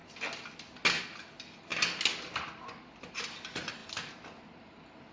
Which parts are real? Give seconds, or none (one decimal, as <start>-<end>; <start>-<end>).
0.0-5.1